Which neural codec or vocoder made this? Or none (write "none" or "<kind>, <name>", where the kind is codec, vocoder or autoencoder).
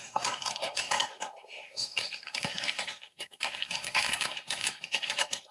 codec, SNAC